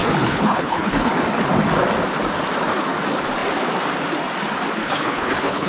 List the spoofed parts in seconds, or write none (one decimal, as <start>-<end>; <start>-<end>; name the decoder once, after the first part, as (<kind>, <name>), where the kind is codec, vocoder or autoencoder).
0.0-1.1 (codec, HILCodec); 4.8-5.7